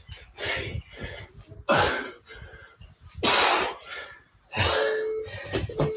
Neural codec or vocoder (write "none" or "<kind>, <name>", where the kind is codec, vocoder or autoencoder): none